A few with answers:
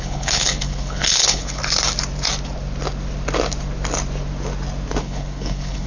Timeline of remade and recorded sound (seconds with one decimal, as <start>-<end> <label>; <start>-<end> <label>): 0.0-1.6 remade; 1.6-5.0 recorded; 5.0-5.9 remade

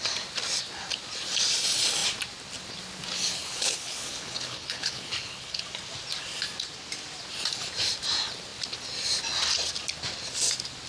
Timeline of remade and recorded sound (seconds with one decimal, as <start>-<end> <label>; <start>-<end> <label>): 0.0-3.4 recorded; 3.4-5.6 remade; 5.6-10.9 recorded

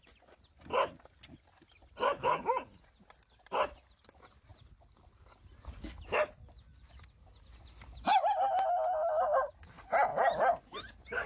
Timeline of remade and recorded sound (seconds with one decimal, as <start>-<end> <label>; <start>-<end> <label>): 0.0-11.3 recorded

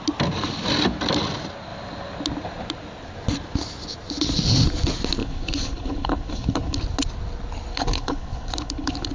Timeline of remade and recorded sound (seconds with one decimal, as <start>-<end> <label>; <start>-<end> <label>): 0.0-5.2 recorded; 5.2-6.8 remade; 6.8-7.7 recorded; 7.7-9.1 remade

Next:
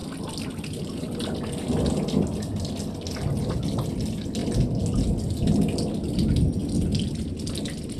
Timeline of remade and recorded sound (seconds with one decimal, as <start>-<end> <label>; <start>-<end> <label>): 0.0-8.0 recorded